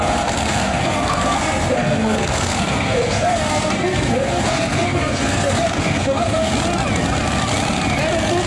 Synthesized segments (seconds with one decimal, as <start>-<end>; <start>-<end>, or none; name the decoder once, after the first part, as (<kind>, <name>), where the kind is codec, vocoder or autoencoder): 0.0-6.5 (codec, SNAC)